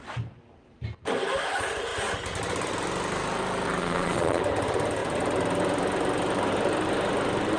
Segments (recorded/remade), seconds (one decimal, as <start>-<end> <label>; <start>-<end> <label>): 0.0-3.8 recorded; 3.8-4.4 remade; 4.4-7.6 recorded

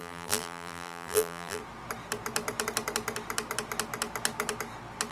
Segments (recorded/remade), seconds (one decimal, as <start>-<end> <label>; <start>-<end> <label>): 0.0-1.6 remade; 1.6-5.1 recorded

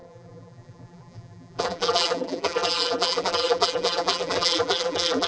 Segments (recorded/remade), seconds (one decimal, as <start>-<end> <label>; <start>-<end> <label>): 0.0-5.3 remade